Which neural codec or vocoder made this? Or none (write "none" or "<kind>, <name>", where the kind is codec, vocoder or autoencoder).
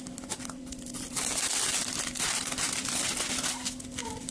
vocoder, BigVGAN v2